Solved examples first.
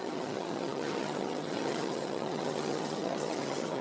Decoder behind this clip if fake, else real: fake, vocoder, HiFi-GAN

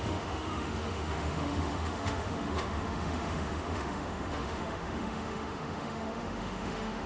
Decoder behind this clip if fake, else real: fake, autoencoder, DAC-VAE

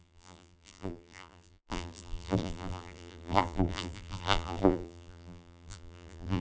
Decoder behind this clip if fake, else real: fake, vocoder, BigVGAN v2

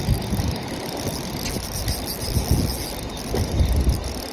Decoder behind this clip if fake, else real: real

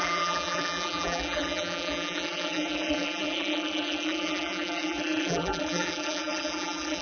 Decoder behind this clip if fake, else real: fake, vocoder, BigVGAN v2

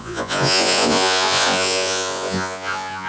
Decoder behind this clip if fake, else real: fake, vocoder, Vocos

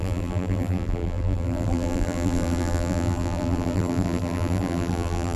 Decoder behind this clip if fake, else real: fake, vocoder, BigVGAN v2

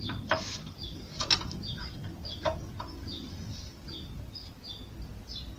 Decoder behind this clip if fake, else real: real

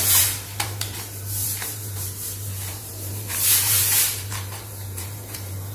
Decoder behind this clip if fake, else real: fake, vocoder, BigVGAN v2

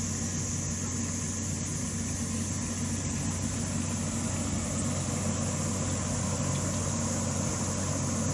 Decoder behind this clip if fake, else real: real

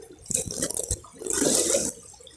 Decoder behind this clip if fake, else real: real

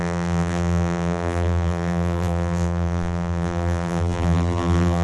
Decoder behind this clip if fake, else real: fake, vocoder, BigVGAN v2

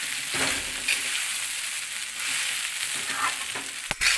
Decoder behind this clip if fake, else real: real